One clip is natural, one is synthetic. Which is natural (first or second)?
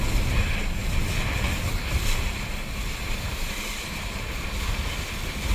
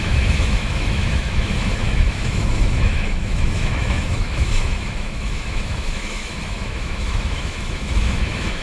first